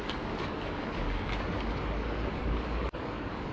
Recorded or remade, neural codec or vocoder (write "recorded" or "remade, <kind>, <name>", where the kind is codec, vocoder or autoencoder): remade, codec, DAC